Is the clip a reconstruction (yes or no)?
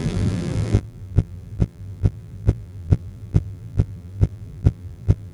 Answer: yes